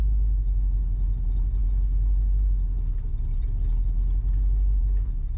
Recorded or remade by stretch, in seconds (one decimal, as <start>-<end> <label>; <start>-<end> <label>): 0.0-5.4 recorded